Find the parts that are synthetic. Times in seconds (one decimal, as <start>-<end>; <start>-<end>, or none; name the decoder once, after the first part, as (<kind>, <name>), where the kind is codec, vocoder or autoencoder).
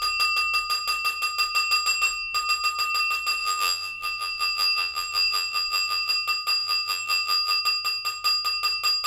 3.4-6.1 (vocoder, BigVGAN v2); 6.6-7.6